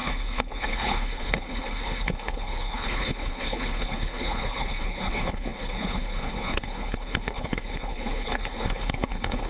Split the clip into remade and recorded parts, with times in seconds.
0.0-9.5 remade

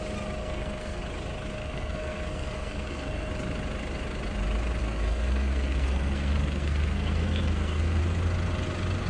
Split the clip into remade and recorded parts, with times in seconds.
0.0-0.4 recorded; 0.4-1.0 remade; 1.0-1.6 recorded; 1.6-3.3 remade; 3.3-4.8 recorded; 4.8-8.0 remade; 8.0-9.1 recorded

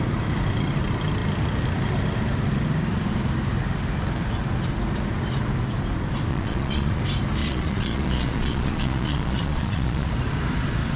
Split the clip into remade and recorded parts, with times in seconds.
0.0-6.3 recorded; 6.3-7.0 remade; 7.0-7.4 recorded; 7.4-10.1 remade; 10.1-11.0 recorded

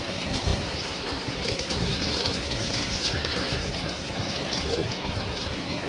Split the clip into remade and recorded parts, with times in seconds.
0.0-5.9 remade

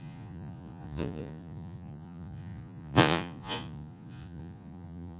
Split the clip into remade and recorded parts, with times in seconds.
0.0-5.2 remade

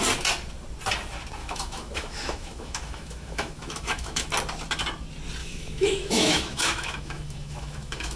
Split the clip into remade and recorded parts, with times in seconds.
0.0-1.4 recorded; 1.4-4.3 remade; 4.3-5.4 recorded; 5.4-8.2 remade

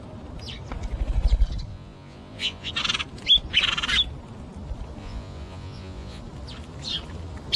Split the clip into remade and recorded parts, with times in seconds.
0.0-1.7 recorded; 1.7-2.7 remade; 2.7-5.0 recorded; 5.0-6.2 remade; 6.2-7.6 recorded